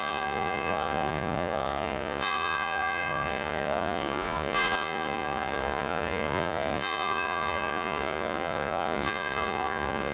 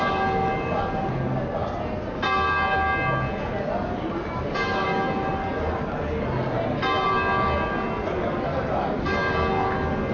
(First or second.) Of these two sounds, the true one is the second